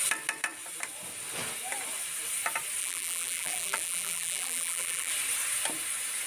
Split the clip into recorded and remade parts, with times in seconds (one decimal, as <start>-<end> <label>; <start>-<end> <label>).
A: 0.0-2.8 recorded; 2.8-5.1 remade; 5.1-6.3 recorded